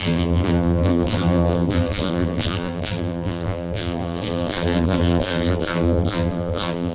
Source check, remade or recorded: remade